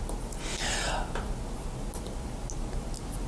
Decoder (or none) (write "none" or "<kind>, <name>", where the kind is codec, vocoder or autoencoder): none